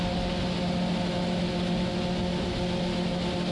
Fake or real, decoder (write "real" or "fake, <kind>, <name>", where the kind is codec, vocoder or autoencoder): real